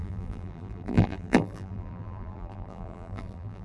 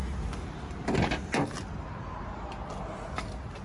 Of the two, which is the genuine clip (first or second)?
second